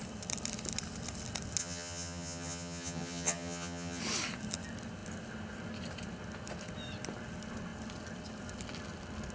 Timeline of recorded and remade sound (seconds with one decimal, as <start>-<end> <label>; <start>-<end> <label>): 0.0-1.6 recorded; 1.6-4.0 remade; 4.0-9.3 recorded